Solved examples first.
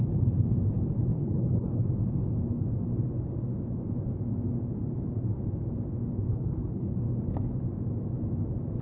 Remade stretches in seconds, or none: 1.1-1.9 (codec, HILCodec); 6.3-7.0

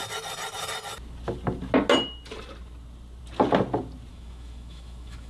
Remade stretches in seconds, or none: 4.1-5.3 (autoencoder, DAC-VAE)

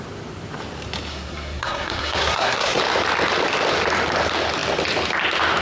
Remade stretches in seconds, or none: 1.1-2.8 (codec, SNAC)

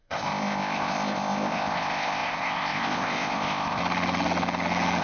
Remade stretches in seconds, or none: 0.0-3.8 (codec, ZipCodec)